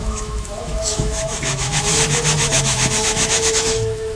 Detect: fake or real fake